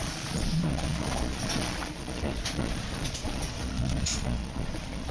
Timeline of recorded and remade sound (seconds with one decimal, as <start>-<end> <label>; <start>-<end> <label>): 0.0-5.1 remade